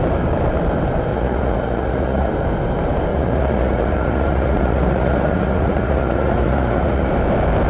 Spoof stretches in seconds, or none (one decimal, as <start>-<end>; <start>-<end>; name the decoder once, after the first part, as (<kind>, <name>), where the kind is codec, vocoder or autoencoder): 1.1-2.3 (vocoder, Vocos); 3.1-7.1